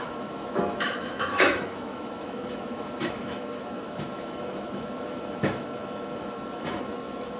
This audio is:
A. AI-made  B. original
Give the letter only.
A